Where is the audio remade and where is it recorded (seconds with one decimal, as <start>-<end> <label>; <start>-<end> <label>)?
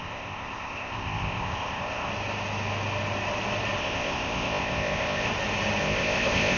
0.0-2.1 remade; 2.1-3.8 recorded; 3.8-5.3 remade; 5.3-5.8 recorded; 5.8-6.6 remade